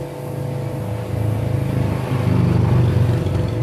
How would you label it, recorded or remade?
recorded